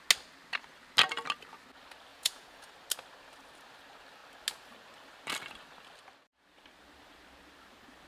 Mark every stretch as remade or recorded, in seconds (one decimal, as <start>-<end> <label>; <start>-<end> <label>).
0.0-2.1 recorded; 2.1-2.7 remade; 2.7-8.1 recorded